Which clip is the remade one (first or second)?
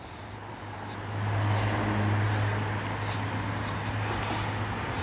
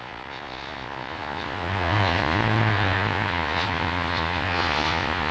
second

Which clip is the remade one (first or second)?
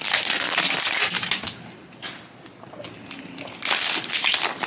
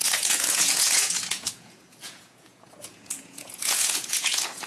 second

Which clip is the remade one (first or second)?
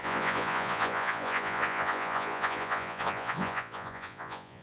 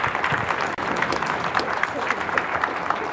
first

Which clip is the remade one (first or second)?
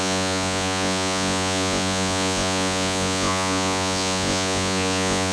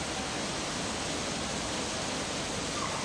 first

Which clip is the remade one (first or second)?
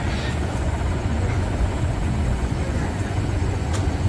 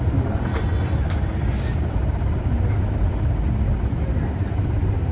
first